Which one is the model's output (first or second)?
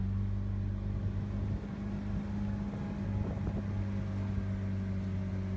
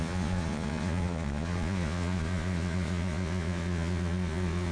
second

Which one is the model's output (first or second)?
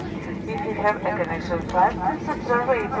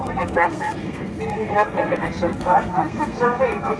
second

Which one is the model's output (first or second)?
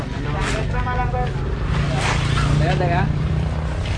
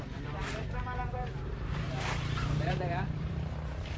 second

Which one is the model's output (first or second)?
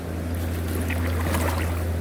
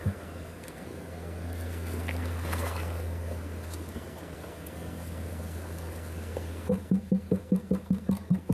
second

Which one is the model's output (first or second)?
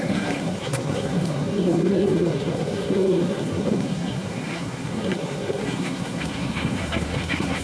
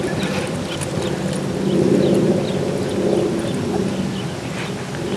first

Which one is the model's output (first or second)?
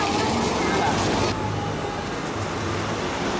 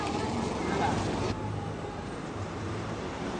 second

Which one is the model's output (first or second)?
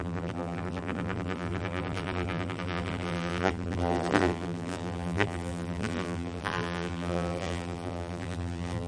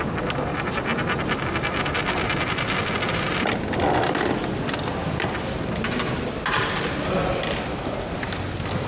first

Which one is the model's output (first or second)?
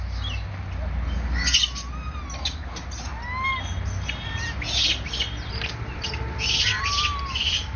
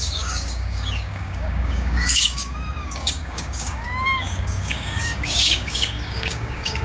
second